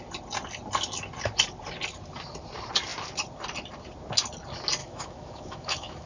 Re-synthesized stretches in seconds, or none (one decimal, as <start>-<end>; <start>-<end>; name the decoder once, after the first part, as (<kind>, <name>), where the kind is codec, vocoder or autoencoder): 4.8-6.1 (autoencoder, DAC-VAE)